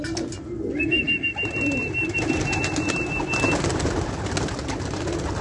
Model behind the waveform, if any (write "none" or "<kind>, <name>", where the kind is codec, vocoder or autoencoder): none